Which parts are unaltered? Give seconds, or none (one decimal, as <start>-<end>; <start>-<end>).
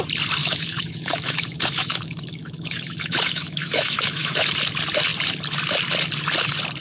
0.0-0.4; 4.5-6.8